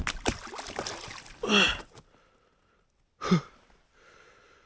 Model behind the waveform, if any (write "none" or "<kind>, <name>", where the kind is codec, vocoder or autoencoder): none